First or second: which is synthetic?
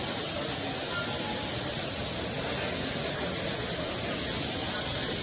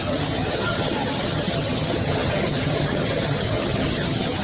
second